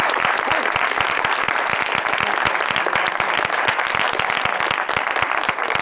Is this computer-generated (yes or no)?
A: no